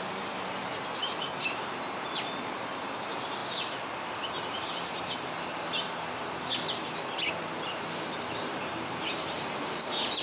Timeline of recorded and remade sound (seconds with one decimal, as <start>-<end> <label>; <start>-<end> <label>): 0.0-3.4 remade; 3.4-7.3 recorded; 7.3-10.2 remade